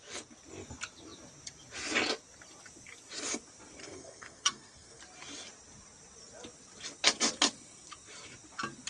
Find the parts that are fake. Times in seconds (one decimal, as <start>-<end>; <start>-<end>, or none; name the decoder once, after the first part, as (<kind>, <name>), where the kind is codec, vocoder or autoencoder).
3.8-5.0 (codec, SNAC)